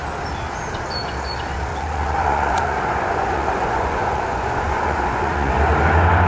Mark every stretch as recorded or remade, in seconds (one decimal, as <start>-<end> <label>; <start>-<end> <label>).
0.0-1.7 recorded; 1.7-5.5 remade; 5.5-6.3 recorded